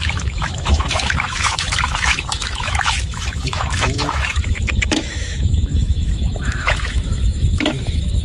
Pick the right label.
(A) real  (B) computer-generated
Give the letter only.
B